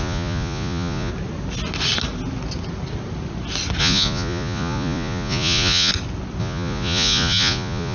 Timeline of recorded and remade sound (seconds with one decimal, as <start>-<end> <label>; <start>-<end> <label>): 0.0-1.1 remade; 1.1-3.8 recorded; 3.8-5.9 remade; 5.9-6.4 recorded; 6.4-7.9 remade